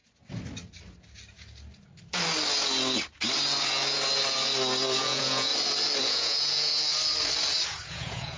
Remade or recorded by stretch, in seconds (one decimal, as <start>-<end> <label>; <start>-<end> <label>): 0.0-5.0 recorded; 5.0-5.5 remade; 5.5-6.0 recorded; 6.0-6.7 remade; 6.7-7.9 recorded; 7.9-8.4 remade